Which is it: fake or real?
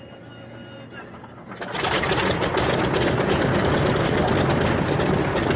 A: real